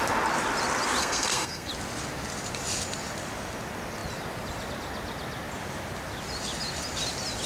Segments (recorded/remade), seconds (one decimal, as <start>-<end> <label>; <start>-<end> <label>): 0.0-1.0 recorded; 1.0-1.7 remade; 1.7-7.5 recorded